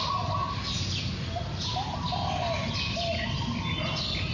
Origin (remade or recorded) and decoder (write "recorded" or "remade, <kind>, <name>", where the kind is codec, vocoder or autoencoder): recorded